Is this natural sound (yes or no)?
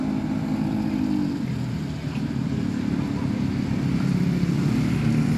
yes